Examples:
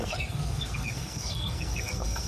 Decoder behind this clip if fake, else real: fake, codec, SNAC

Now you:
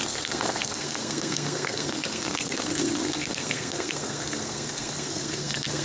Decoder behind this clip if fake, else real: fake, codec, SNAC